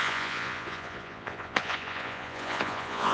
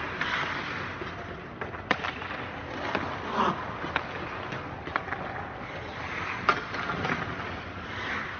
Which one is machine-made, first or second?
first